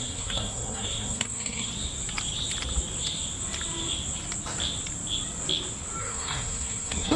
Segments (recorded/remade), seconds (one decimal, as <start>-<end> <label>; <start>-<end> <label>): 0.0-1.7 remade; 1.7-6.0 recorded; 6.0-7.2 remade